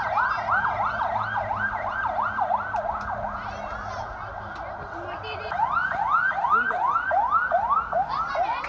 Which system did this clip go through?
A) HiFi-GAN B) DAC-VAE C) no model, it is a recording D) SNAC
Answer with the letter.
C